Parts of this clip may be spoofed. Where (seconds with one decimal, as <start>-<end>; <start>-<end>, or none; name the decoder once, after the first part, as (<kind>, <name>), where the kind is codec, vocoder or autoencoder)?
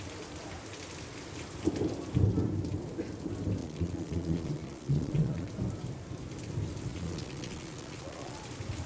3.6-5.5 (vocoder, Vocos); 6.9-8.4